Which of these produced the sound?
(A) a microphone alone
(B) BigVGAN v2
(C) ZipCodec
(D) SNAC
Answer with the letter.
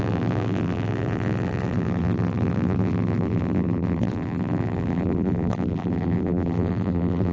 B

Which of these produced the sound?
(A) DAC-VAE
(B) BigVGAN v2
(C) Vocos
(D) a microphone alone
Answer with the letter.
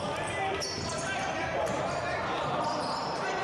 B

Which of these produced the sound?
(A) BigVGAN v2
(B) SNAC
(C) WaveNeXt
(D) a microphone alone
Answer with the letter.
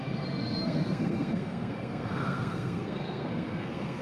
B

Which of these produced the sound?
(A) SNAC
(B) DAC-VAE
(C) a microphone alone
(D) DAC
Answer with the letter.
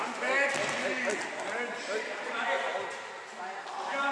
C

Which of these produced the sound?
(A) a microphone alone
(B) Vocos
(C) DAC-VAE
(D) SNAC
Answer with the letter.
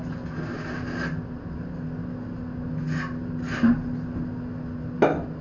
A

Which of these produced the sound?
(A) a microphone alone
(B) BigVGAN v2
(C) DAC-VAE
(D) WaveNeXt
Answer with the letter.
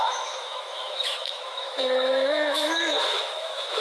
C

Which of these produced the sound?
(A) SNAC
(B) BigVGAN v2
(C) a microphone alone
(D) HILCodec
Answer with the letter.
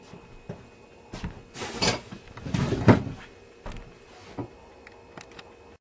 C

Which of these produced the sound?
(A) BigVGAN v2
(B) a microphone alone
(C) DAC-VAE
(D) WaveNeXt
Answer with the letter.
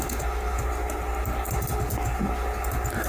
B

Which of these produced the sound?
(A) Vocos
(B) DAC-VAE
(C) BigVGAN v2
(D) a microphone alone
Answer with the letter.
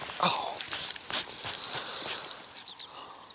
D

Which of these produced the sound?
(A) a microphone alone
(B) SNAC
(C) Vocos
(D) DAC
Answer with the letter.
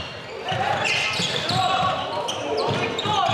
A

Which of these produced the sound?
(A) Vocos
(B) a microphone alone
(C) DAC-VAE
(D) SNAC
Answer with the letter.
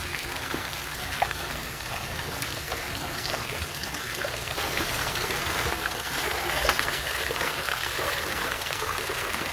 D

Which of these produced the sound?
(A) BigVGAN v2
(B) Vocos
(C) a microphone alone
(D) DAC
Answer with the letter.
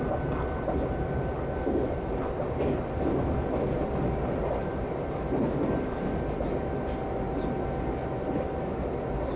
C